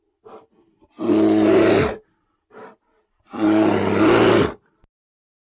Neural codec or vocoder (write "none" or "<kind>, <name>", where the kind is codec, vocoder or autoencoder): none